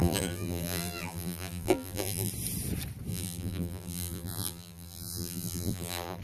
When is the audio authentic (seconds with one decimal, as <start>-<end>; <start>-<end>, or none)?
2.3-3.1